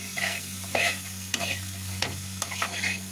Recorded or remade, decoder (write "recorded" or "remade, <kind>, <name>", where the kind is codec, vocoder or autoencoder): remade, codec, SNAC